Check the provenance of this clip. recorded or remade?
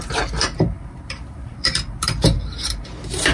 remade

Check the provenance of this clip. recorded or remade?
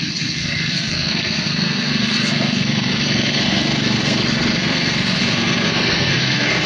remade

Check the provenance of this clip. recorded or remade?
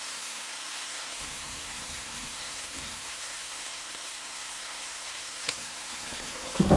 remade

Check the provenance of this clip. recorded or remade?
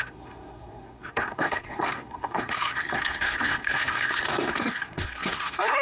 remade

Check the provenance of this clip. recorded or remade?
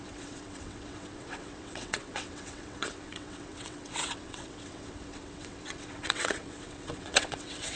remade